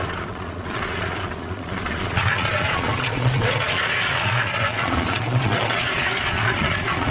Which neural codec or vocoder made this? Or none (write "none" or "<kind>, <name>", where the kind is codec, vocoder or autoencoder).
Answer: vocoder, Vocos